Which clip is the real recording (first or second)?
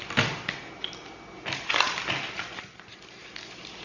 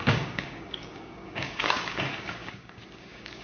first